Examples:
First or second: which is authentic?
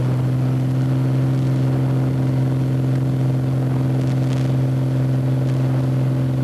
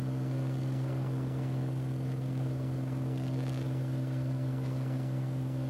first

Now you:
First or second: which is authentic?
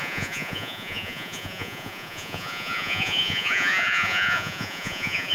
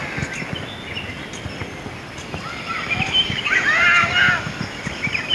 second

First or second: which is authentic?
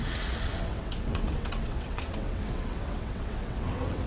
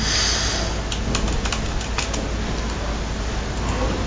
second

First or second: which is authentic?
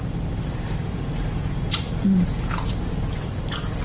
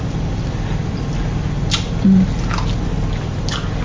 second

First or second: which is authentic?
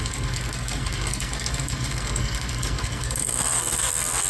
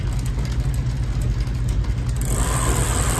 second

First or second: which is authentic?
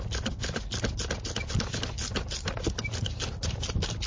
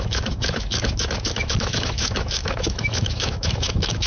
first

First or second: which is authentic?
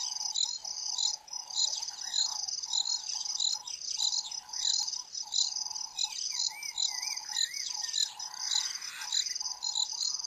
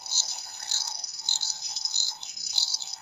first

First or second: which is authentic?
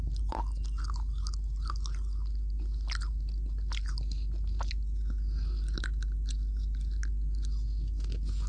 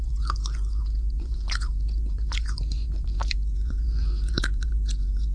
first